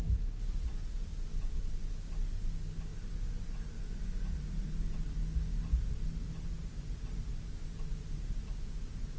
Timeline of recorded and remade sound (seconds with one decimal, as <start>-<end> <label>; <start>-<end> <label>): 0.0-7.6 recorded; 7.6-8.2 remade; 8.2-9.2 recorded